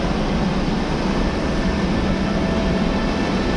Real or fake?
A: real